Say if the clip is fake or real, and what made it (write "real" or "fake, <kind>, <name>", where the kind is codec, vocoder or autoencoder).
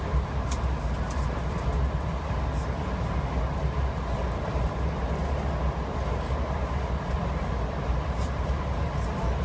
real